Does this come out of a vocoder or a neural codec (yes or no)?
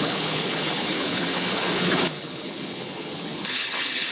yes